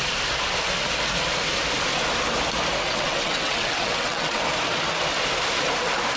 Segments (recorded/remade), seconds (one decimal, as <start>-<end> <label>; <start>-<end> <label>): 0.0-2.9 recorded; 2.9-4.4 remade; 4.4-6.2 recorded